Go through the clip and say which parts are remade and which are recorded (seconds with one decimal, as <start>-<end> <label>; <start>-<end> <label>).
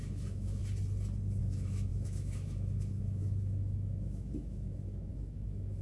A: 0.0-0.6 remade; 0.6-1.4 recorded; 1.4-5.8 remade